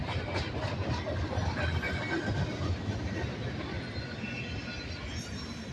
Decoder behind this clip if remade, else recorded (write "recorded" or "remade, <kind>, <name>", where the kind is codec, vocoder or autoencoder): recorded